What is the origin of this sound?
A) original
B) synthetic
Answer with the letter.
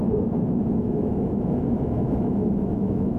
B